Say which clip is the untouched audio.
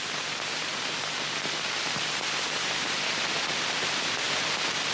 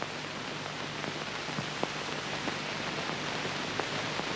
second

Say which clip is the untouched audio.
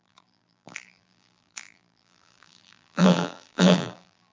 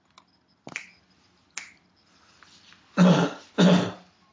second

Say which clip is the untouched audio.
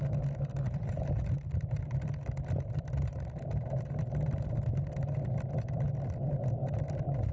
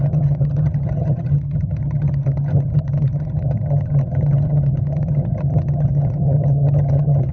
first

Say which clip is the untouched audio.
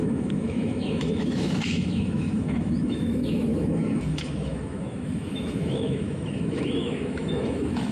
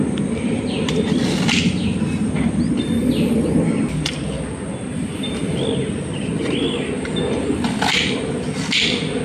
second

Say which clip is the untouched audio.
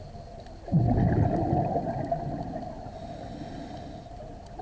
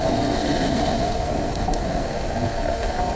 first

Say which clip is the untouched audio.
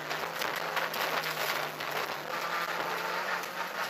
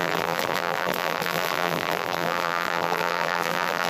first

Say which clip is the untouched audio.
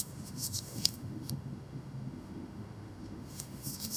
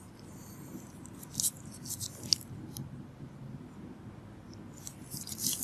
second